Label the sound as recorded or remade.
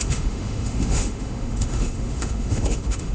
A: remade